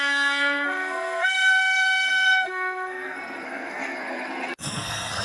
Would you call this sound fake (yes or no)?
yes